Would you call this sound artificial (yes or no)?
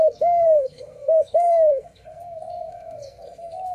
yes